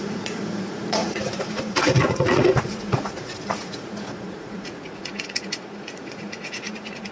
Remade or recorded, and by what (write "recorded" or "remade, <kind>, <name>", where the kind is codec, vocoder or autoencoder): remade, vocoder, Vocos